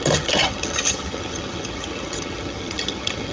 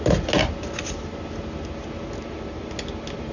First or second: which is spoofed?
first